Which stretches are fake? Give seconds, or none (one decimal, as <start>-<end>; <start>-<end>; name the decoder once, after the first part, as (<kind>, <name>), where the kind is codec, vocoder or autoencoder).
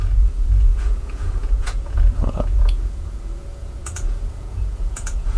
0.0-5.4 (vocoder, Vocos)